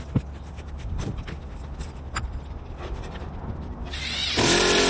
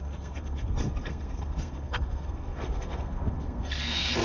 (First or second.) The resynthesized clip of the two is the second